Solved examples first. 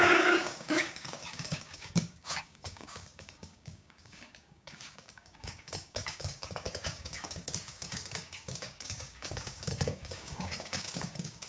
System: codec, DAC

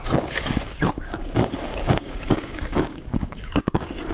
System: codec, DAC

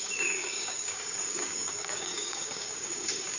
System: codec, DAC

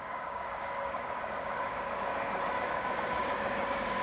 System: codec, DAC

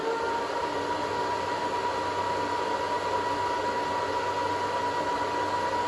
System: none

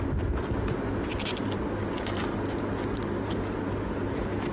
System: none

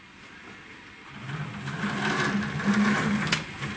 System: none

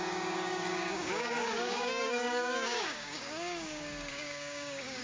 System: codec, DAC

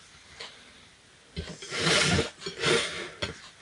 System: none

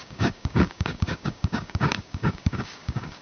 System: codec, DAC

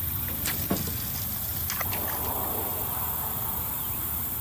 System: none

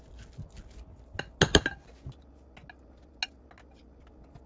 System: none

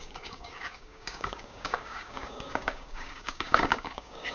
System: codec, DAC